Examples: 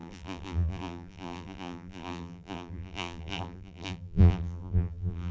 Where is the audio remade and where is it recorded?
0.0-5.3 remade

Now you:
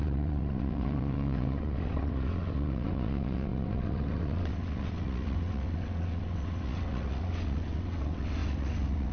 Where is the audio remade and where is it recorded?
0.0-9.1 remade

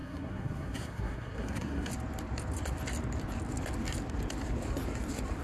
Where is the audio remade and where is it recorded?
0.0-1.9 remade; 1.9-5.4 recorded

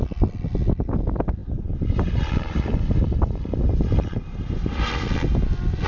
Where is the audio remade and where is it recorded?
0.0-1.4 recorded; 1.4-4.9 remade; 4.9-5.9 recorded